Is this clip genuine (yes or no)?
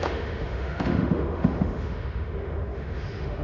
no